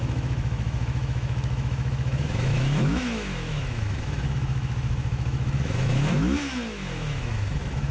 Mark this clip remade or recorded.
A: remade